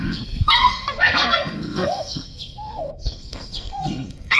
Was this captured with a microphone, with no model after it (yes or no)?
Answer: no